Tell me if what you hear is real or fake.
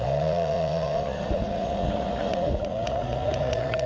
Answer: fake